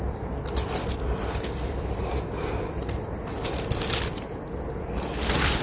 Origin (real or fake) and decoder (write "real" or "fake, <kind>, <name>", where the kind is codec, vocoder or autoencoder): real